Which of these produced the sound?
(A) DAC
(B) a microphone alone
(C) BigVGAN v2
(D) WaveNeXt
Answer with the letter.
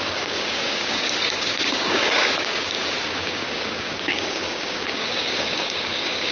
A